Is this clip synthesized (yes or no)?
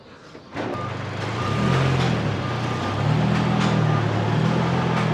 no